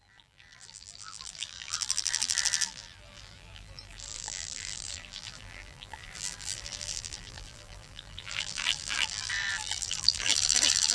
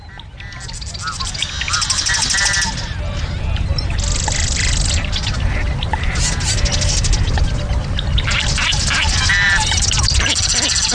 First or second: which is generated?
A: first